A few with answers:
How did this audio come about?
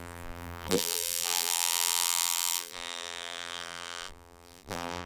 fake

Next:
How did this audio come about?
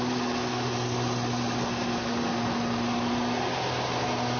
real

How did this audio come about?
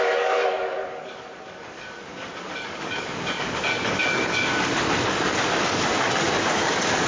fake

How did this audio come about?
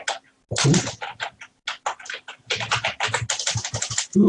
real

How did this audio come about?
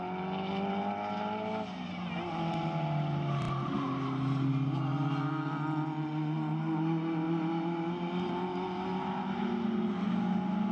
real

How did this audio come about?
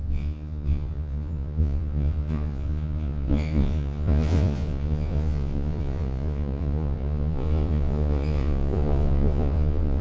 fake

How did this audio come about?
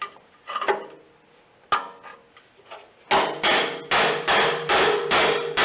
real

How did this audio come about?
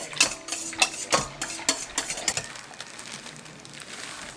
real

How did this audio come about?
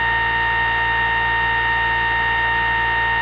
real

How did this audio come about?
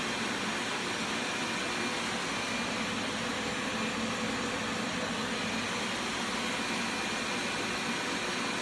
real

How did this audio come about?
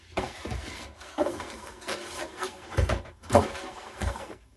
fake